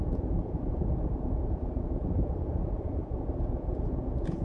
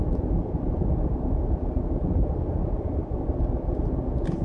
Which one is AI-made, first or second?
first